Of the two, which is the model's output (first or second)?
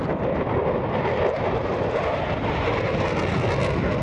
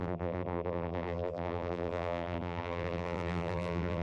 second